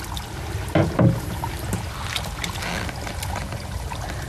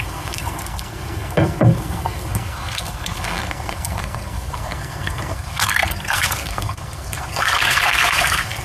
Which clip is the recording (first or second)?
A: first